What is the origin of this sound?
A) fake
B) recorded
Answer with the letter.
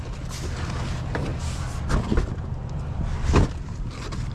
B